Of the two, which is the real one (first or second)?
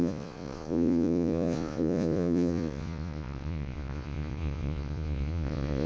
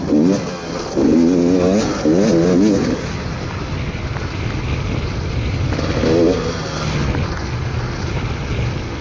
second